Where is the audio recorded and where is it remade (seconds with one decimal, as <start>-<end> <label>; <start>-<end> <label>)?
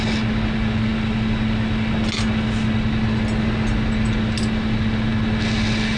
0.0-6.0 recorded